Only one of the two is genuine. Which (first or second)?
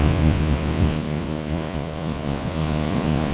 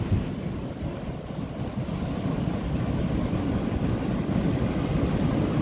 second